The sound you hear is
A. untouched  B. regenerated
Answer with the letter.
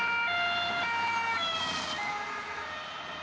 A